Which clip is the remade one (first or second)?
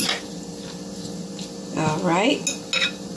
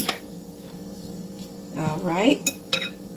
second